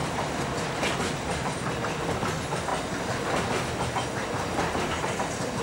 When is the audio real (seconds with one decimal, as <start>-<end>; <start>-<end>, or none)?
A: 2.1-5.6